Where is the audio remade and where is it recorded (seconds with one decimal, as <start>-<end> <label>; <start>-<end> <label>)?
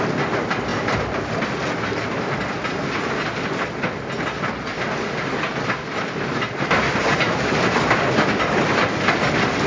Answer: 0.0-0.7 remade; 0.7-5.2 recorded; 5.2-9.7 remade